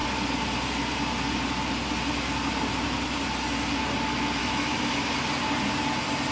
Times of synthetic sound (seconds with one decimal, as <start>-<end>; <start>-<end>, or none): 4.4-5.1